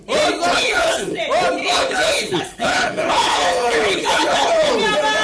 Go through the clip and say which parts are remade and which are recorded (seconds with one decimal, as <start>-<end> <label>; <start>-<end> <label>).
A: 0.0-0.5 recorded; 0.5-1.2 remade; 1.2-1.6 recorded; 1.6-4.7 remade; 4.7-5.2 recorded